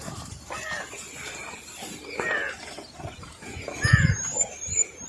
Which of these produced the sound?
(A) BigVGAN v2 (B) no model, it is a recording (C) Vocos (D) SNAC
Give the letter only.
A